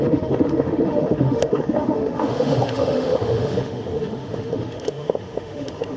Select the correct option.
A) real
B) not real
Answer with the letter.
B